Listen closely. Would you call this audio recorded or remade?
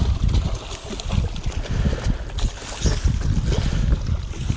recorded